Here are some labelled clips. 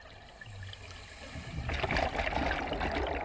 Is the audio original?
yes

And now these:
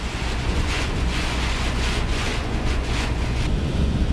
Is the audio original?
no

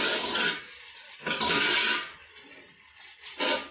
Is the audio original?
yes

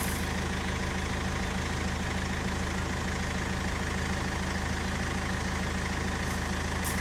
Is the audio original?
yes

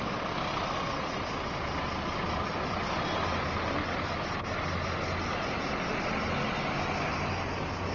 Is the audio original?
yes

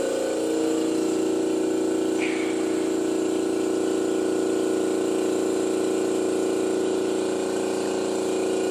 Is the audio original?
yes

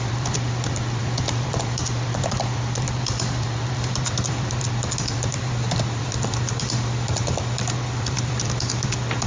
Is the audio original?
no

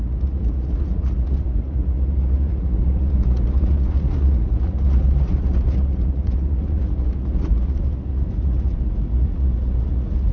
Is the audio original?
no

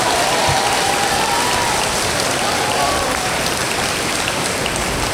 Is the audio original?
no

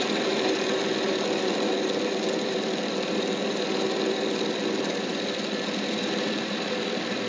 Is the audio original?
no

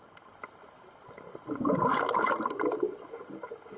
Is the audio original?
yes